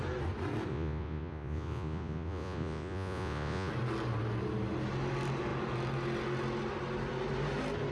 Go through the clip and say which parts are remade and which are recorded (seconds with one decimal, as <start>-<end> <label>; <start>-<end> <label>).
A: 0.0-0.7 recorded; 0.7-3.7 remade; 3.7-7.9 recorded